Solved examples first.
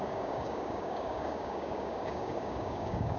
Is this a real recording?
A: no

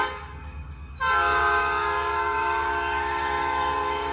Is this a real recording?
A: no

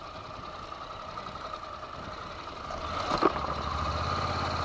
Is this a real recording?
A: yes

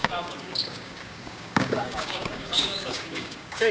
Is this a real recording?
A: no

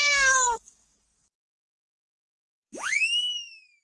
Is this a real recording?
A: no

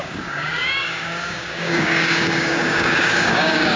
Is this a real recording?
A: no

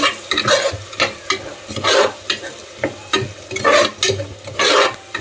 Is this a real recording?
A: yes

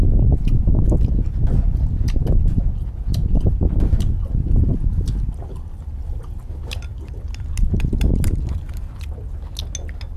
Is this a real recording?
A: yes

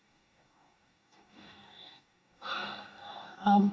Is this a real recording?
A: no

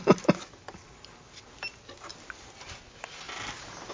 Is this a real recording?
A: yes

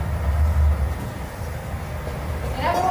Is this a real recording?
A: yes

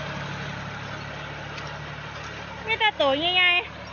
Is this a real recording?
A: yes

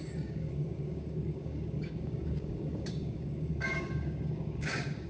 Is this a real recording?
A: no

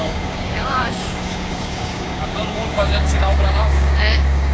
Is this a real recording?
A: no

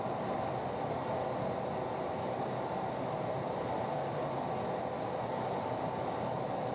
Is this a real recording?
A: yes